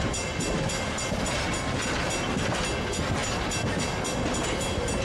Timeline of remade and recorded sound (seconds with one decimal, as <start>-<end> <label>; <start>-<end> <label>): 0.0-5.0 recorded